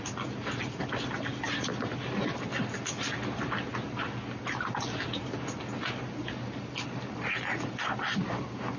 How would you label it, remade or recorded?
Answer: recorded